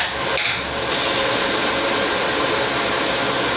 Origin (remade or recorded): recorded